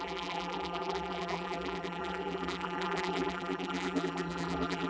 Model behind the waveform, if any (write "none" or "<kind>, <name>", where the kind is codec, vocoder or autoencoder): vocoder, BigVGAN v2